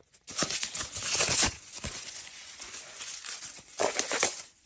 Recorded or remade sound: remade